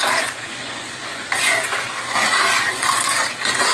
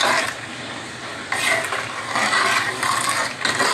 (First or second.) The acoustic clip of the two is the second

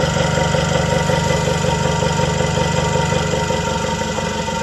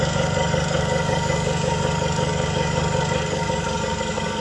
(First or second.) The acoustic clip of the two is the first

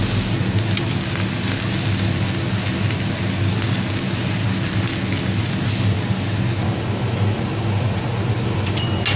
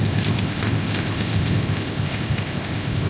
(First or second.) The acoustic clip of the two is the first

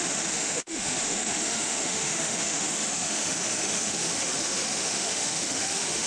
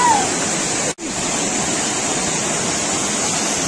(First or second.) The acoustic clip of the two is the second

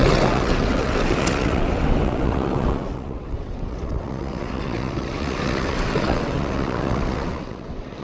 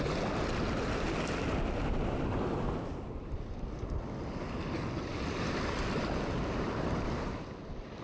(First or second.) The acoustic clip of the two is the second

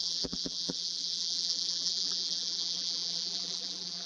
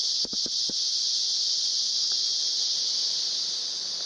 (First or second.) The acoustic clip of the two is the second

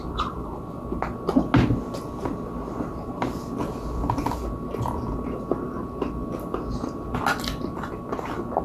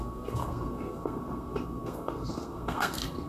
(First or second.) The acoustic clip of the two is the first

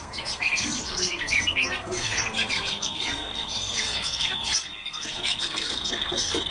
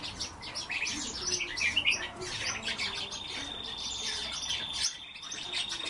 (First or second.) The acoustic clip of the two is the second